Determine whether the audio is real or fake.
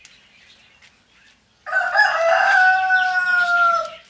real